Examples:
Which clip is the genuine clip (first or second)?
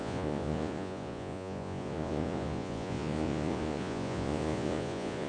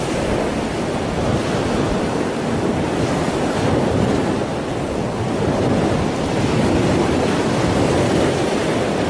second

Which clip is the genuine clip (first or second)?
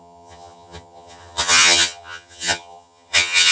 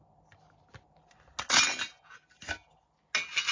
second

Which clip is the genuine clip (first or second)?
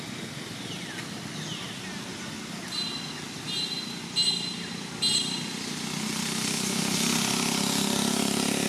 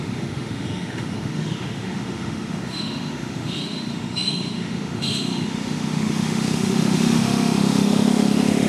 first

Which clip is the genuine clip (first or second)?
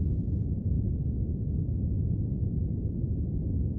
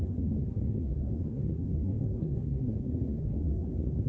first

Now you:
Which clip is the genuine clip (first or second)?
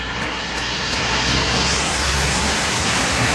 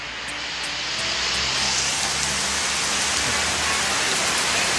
second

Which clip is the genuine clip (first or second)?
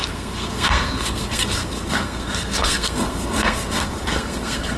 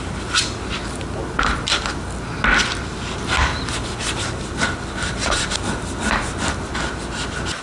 second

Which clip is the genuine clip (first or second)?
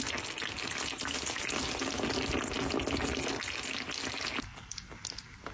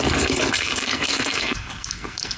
first